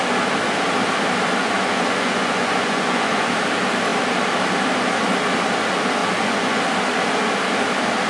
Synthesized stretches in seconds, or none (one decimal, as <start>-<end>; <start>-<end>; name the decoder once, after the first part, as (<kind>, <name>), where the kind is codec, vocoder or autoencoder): 1.4-3.3 (vocoder, Vocos); 6.0-6.6